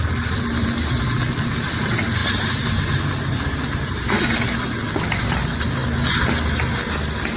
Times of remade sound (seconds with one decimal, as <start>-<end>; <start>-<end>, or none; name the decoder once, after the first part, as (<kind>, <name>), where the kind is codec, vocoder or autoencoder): none

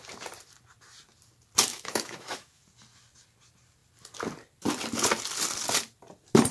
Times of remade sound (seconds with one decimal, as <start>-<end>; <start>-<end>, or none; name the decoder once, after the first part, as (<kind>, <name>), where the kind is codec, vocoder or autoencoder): 1.7-2.6 (autoencoder, DAC-VAE)

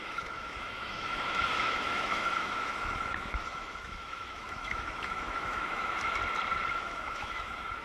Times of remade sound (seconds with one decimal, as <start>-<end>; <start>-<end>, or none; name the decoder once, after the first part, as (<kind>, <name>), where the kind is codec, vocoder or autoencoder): 0.0-6.2 (autoencoder, DAC-VAE); 6.7-7.8

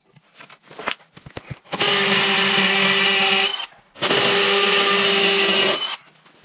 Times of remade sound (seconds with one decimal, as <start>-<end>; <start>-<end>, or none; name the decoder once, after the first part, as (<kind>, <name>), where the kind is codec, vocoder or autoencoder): none